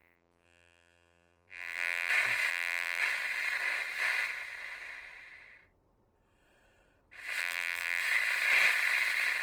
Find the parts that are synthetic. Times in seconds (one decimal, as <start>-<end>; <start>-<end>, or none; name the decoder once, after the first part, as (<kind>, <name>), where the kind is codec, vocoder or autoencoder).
0.0-2.1 (vocoder, BigVGAN v2); 2.5-3.0; 7.4-8.0